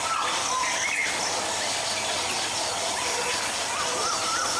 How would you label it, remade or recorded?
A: recorded